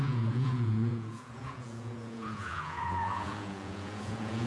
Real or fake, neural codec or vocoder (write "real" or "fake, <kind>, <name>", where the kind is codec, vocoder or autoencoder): fake, vocoder, Vocos